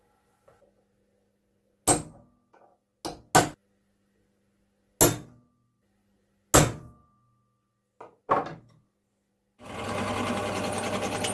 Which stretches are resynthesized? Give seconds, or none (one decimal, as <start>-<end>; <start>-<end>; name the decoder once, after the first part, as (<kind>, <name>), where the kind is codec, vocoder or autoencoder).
none